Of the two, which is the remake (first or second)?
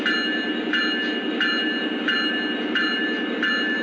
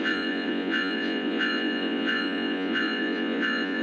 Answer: second